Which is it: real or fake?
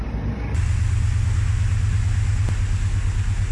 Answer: real